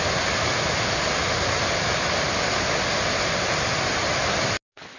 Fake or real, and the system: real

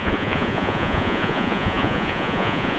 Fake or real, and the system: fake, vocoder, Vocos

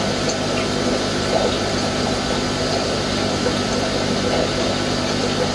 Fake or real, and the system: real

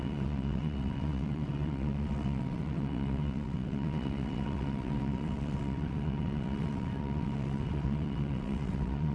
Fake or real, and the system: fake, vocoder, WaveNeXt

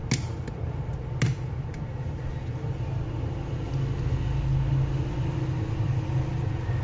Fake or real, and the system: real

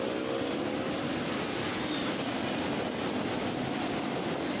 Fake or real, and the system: real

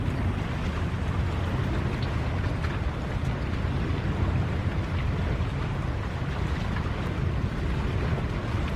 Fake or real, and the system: real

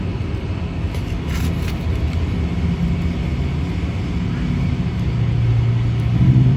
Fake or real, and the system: real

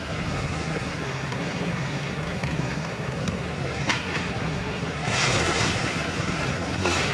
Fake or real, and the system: fake, codec, SNAC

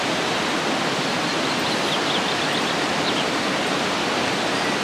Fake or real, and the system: real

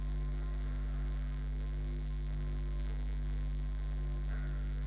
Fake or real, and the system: fake, codec, SNAC